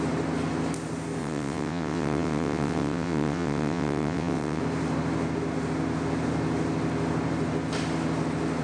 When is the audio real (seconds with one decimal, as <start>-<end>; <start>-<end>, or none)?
0.0-1.2; 4.6-8.6